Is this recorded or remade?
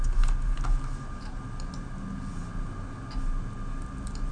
recorded